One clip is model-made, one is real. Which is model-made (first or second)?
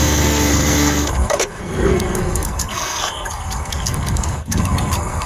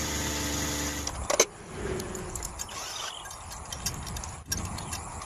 first